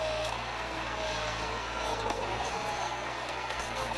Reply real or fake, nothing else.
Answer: fake